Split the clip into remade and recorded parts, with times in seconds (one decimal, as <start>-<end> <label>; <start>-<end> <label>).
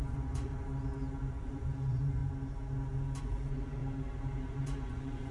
0.0-0.5 remade; 0.5-1.3 recorded; 1.3-2.2 remade; 2.2-3.2 recorded; 3.2-3.8 remade; 3.8-4.5 recorded; 4.5-5.3 remade